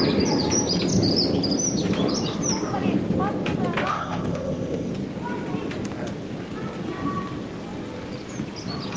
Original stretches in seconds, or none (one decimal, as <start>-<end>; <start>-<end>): 0.0-3.9; 4.9-9.0